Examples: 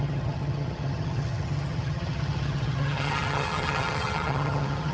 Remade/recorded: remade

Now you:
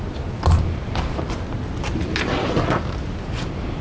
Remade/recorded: recorded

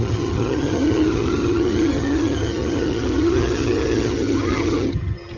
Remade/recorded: remade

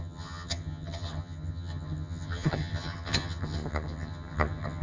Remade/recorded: remade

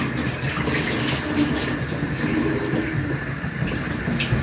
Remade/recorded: recorded